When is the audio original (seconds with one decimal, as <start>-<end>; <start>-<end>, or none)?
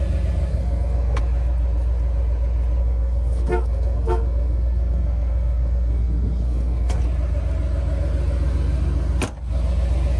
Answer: 0.0-0.5; 1.2-2.8; 7.0-10.2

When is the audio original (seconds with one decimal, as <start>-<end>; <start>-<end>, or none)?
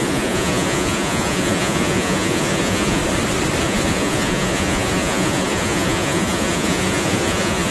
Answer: 3.0-3.6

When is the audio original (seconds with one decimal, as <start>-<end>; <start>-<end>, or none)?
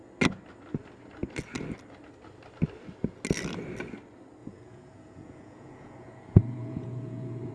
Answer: 0.0-4.4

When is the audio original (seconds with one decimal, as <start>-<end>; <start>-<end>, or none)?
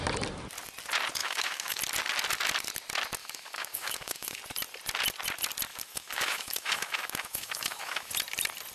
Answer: 0.0-1.2; 1.8-3.2; 4.4-5.7; 8.1-8.7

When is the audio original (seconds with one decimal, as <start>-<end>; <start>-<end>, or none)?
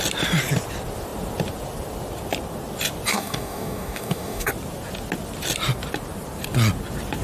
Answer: 0.0-3.1; 4.5-7.2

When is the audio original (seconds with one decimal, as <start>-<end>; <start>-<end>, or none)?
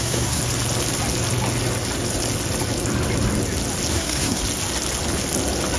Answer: 0.4-3.9; 4.4-5.8